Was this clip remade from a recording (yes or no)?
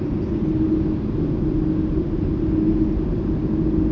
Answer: no